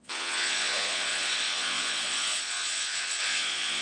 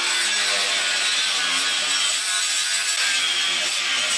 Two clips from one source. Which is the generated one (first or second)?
first